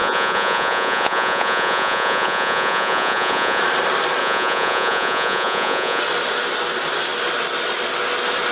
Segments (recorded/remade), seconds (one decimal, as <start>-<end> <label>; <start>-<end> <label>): 0.0-3.6 remade; 3.6-4.2 recorded; 4.2-6.0 remade; 6.0-8.5 recorded